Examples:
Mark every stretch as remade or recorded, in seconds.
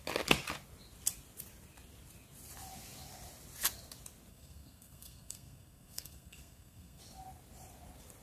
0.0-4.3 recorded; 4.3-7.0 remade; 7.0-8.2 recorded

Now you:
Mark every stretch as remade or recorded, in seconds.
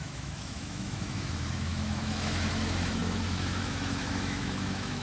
0.0-5.0 remade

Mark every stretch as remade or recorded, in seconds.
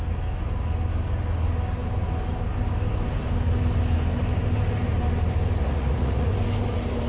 0.0-5.6 recorded; 5.6-6.3 remade; 6.3-7.1 recorded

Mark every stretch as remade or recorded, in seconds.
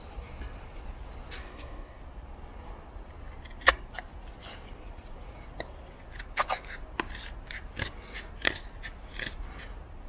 0.0-1.4 recorded; 1.4-2.0 remade; 2.0-10.1 recorded